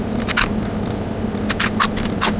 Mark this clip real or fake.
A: real